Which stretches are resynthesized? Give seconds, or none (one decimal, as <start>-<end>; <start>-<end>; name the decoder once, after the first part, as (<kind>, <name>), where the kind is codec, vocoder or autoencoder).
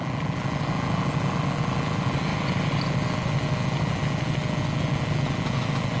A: none